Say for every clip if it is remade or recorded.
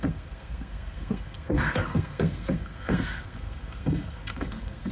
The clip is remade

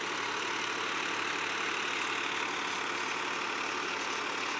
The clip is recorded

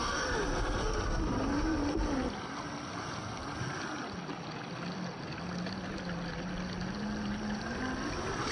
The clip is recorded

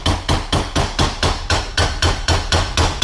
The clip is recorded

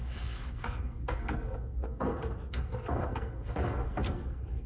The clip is remade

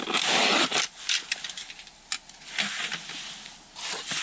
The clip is recorded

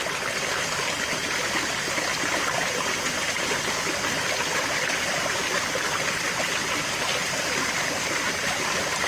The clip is recorded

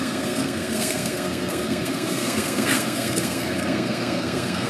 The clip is remade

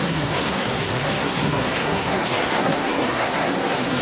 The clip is remade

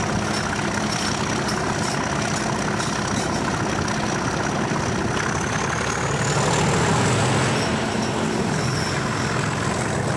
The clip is recorded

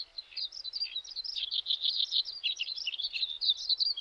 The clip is recorded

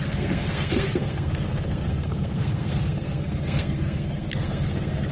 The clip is remade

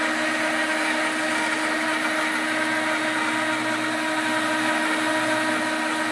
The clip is recorded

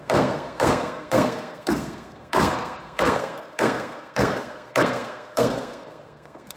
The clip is remade